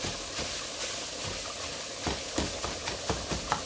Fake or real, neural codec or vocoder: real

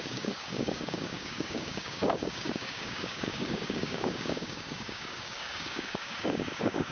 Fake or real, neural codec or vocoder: fake, codec, DAC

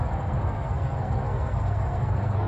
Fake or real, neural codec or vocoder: fake, codec, SNAC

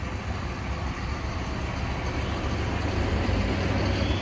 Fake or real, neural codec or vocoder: real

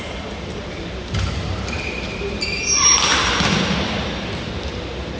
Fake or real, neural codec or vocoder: real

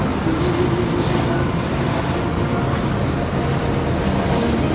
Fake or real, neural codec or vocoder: real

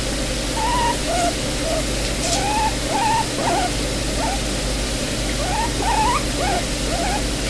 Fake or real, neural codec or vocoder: real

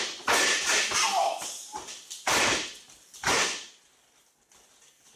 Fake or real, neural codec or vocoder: real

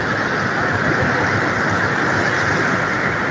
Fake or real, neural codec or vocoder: real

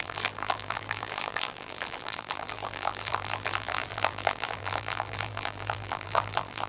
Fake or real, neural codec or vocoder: fake, vocoder, BigVGAN v2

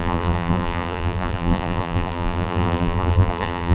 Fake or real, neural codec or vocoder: fake, vocoder, BigVGAN v2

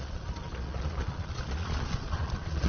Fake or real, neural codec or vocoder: fake, vocoder, Vocos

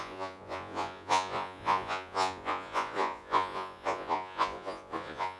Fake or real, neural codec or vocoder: fake, vocoder, Vocos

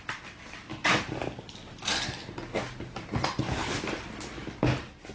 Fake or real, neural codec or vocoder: real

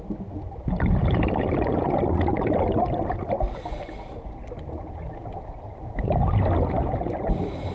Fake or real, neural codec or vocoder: real